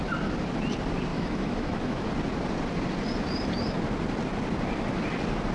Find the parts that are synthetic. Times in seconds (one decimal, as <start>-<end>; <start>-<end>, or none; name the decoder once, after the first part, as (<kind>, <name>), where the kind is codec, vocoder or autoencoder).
1.1-2.1 (autoencoder, DAC-VAE)